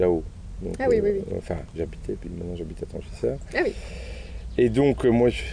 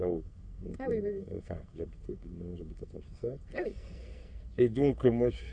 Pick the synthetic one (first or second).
second